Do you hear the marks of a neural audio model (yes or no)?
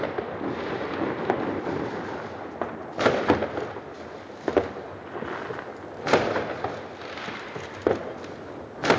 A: no